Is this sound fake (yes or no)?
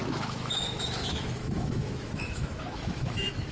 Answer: yes